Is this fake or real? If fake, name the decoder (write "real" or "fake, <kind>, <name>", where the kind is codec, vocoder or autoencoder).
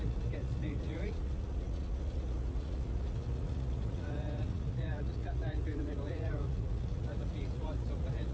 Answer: fake, vocoder, Vocos